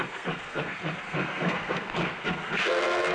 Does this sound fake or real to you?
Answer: fake